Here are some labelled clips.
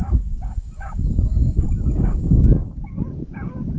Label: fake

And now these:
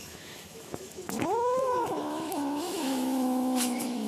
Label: fake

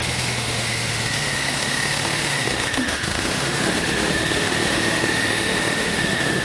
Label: fake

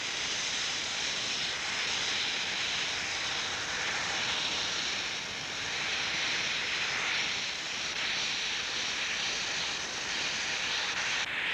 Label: fake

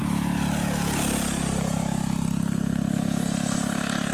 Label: real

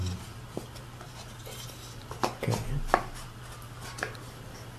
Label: real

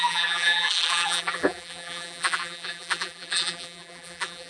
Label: fake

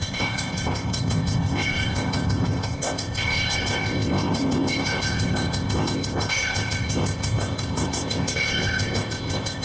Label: fake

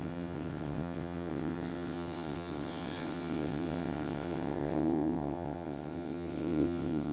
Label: fake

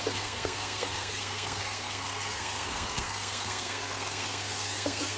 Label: fake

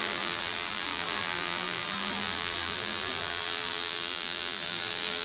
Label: fake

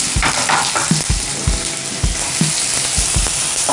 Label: real